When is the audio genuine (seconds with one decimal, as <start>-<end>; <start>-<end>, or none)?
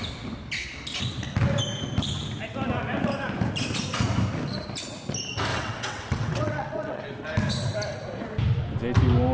0.0-5.5; 7.0-9.3